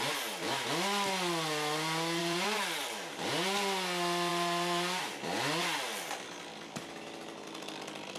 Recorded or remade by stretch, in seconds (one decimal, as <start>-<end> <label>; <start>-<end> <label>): 0.0-2.2 recorded; 2.2-3.3 remade; 3.3-4.3 recorded; 4.3-5.0 remade; 5.0-8.2 recorded